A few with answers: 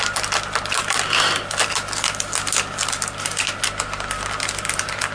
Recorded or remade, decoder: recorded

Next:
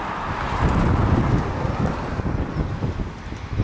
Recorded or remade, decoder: recorded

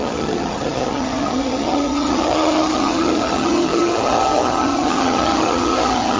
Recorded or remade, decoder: remade, vocoder, HiFi-GAN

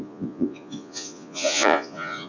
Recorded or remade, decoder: remade, vocoder, Vocos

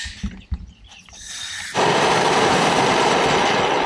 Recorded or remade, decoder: remade, vocoder, BigVGAN v2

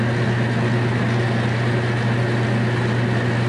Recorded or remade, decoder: recorded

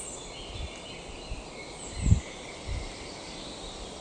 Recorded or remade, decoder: recorded